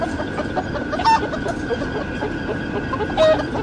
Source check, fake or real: real